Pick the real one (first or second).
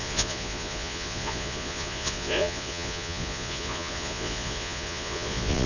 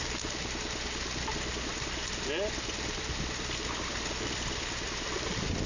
second